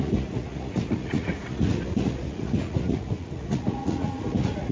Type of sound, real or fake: fake